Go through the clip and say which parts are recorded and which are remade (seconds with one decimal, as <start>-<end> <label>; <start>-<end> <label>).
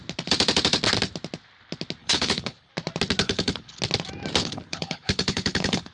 0.0-2.0 recorded; 2.0-2.7 remade; 2.7-3.2 recorded; 3.2-3.8 remade; 3.8-4.4 recorded; 4.4-5.9 remade